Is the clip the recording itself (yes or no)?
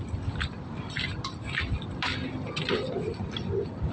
yes